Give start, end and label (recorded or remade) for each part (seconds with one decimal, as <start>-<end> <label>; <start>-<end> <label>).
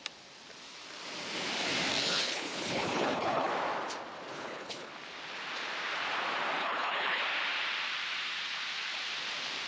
0.0-2.0 recorded; 2.0-3.5 remade; 3.5-4.3 recorded; 4.3-4.9 remade; 4.9-6.6 recorded; 6.6-7.2 remade; 7.2-9.7 recorded